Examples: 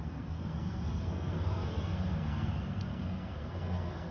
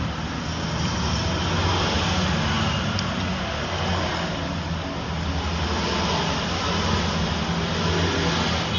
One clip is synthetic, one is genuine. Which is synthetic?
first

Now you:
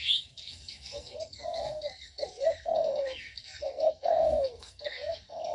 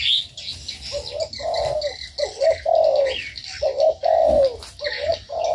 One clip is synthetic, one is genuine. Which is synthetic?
first